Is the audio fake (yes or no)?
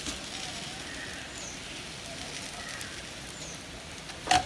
no